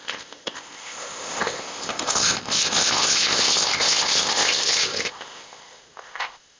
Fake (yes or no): yes